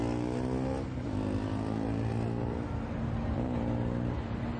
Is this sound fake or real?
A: real